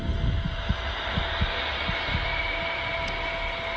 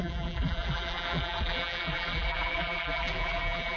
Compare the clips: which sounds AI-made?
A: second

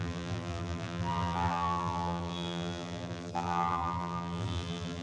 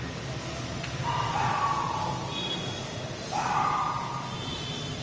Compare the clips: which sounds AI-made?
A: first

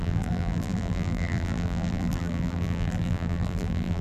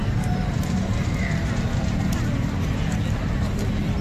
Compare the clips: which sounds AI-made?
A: first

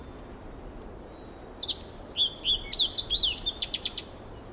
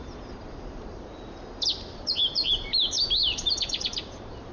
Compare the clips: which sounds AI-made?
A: second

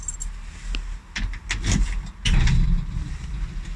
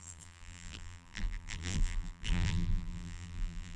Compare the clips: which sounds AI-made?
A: second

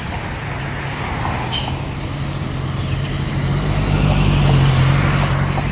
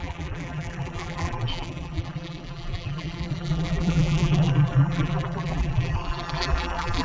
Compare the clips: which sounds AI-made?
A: second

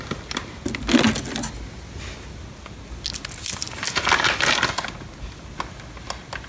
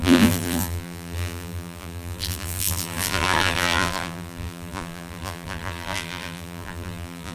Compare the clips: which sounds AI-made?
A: second